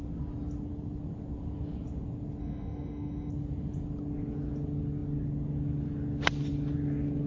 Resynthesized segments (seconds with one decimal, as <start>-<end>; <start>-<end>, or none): 2.4-3.3